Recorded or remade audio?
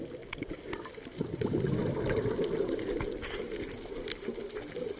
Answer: recorded